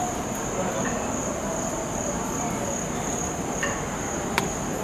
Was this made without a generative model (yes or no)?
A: yes